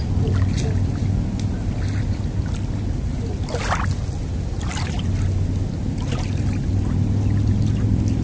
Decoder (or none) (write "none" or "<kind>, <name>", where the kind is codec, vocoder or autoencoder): none